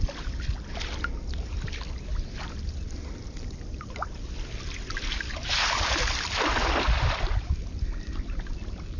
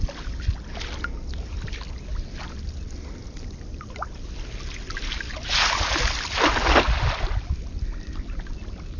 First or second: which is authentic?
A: second